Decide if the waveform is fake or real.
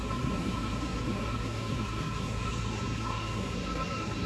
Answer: fake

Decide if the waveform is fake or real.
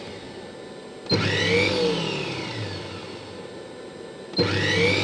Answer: real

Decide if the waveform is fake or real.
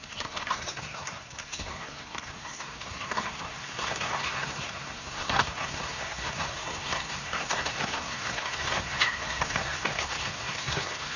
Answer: fake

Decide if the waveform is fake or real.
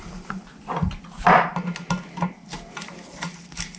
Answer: real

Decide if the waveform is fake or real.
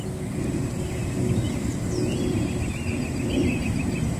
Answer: real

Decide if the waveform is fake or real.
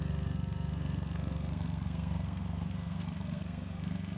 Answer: fake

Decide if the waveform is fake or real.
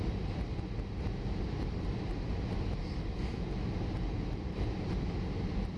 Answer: real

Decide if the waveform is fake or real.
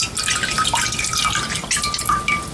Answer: real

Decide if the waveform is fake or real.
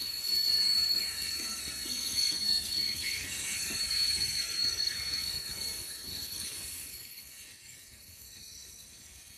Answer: fake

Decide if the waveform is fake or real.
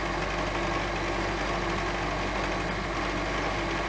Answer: real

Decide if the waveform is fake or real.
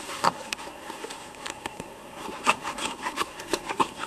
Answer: fake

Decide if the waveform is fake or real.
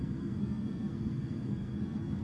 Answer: fake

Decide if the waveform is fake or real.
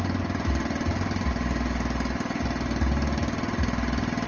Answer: real